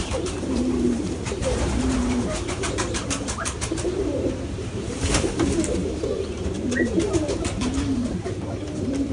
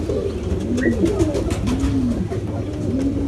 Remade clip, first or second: first